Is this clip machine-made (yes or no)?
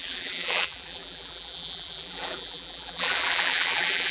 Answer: yes